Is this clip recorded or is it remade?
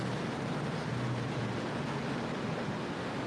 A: recorded